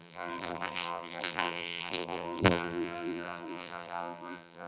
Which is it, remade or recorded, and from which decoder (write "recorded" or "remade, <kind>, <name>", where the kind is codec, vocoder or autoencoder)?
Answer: remade, vocoder, BigVGAN v2